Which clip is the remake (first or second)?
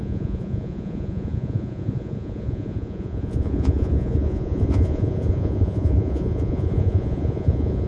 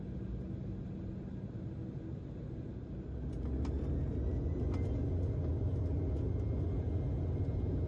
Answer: first